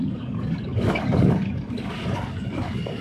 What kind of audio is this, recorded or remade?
remade